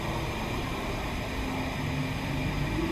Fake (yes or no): no